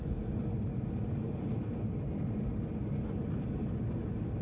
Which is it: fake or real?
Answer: real